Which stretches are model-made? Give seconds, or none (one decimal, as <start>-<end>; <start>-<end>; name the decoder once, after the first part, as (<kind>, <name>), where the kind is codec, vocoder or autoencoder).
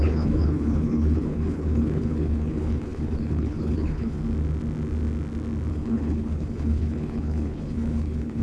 0.0-4.2 (codec, HILCodec); 5.7-8.4